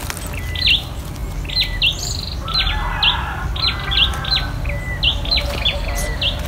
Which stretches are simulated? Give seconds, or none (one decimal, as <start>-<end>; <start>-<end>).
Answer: none